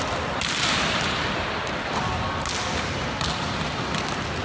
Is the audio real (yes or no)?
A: yes